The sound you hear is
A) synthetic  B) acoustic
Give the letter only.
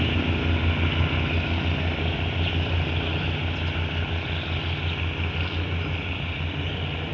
B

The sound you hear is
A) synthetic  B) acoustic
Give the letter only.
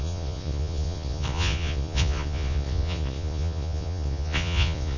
A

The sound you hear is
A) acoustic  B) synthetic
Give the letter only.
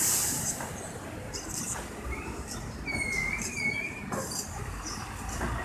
B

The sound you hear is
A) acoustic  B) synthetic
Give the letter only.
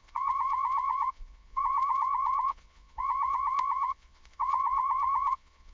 B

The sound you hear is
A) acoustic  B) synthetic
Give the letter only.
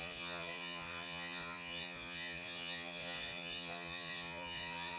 B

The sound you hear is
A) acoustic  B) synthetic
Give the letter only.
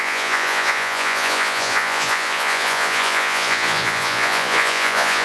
B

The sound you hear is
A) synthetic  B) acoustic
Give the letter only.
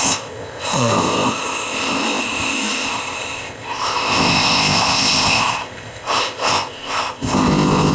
A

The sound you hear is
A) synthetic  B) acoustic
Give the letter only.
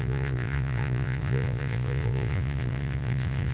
A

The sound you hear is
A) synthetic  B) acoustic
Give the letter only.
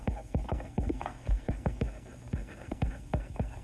A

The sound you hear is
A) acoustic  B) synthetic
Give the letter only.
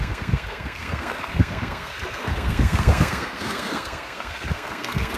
B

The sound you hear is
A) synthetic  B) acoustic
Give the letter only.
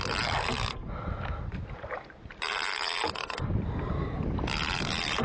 B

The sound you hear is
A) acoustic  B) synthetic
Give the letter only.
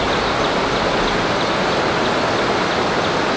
A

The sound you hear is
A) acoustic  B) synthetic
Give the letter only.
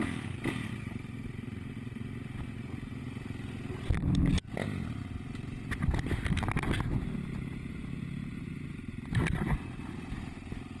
A